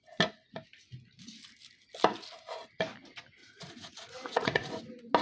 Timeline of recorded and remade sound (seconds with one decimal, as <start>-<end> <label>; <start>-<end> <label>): 0.0-3.4 recorded; 3.4-4.8 remade; 4.8-5.2 recorded